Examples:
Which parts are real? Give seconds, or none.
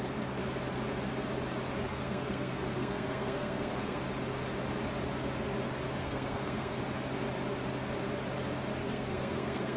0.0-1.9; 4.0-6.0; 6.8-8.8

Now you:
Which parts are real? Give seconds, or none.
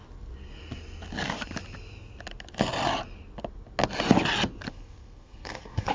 0.0-4.7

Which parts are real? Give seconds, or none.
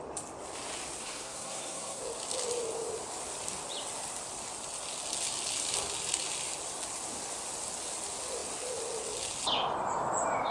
0.0-1.0; 2.0-10.5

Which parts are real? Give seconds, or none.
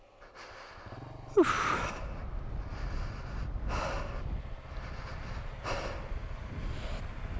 0.0-7.4